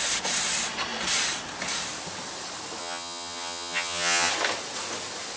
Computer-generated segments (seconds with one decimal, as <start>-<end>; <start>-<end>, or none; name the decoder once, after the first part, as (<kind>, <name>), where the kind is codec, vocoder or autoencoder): 2.8-4.3 (vocoder, HiFi-GAN)